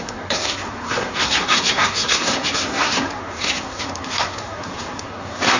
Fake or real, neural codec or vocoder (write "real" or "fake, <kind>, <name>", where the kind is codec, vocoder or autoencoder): fake, codec, SNAC